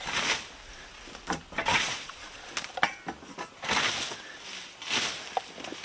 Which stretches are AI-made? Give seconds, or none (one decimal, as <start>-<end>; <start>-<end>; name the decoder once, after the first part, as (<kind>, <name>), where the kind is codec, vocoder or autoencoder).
1.7-2.5 (vocoder, Vocos)